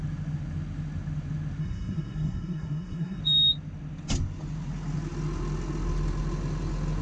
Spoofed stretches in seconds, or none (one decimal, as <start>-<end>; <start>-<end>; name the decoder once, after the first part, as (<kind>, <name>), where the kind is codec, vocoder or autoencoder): 1.6-3.2 (codec, SNAC)